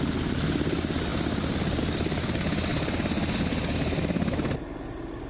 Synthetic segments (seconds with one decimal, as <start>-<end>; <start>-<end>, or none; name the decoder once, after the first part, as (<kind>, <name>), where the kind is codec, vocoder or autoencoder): none